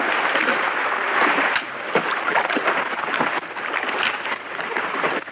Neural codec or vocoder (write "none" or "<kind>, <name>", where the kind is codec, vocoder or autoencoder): none